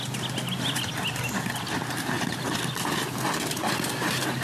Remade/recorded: recorded